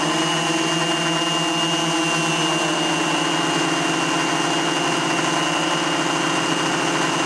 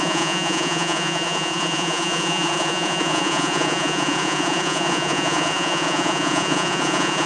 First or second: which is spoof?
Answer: second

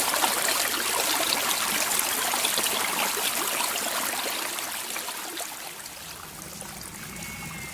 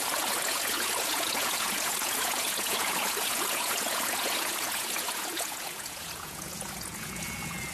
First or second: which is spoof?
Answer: second